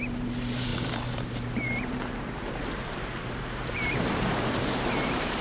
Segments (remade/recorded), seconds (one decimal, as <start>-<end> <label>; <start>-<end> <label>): 0.0-5.4 remade